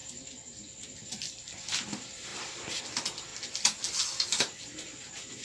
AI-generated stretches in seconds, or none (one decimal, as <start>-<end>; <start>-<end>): none